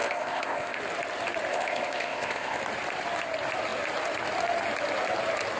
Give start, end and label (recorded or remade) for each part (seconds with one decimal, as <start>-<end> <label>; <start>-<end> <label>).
0.0-0.8 remade; 0.8-1.5 recorded; 1.5-2.6 remade; 2.6-5.6 recorded